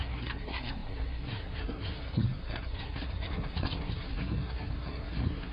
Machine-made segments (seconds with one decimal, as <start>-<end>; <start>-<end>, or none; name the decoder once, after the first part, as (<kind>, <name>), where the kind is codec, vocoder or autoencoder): 0.0-5.5 (codec, SNAC)